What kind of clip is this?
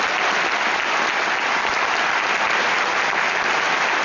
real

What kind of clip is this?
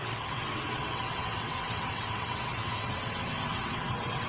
fake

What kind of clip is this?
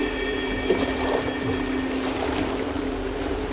real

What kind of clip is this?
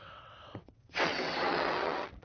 fake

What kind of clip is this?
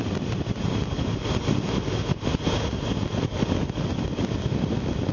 real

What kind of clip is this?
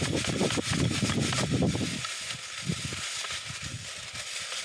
real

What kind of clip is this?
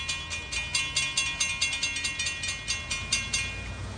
real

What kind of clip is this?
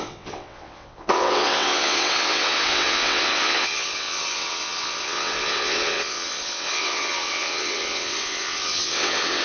fake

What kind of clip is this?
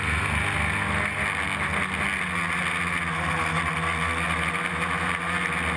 real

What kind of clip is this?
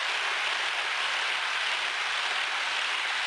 real